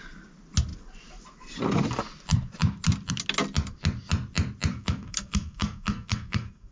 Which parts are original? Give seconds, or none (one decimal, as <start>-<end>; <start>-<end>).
0.0-4.7